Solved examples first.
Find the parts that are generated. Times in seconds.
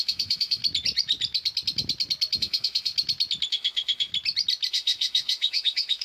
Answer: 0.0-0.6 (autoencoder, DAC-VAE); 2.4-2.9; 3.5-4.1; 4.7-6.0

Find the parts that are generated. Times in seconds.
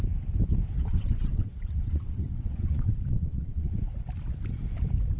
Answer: 0.8-3.9 (vocoder, WaveNeXt)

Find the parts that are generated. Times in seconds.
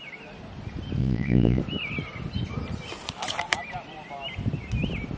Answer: 1.0-1.6 (vocoder, Vocos)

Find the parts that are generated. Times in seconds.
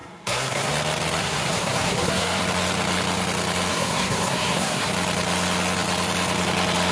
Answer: 0.0-0.7 (codec, SNAC); 1.2-2.4; 3.7-4.9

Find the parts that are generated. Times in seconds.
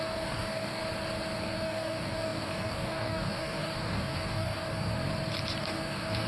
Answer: 0.0-0.8 (codec, DAC); 1.4-4.9; 5.6-6.3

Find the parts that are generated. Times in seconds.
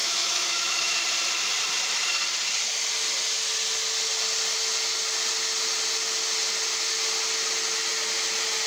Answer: 0.0-1.0 (autoencoder, DAC-VAE)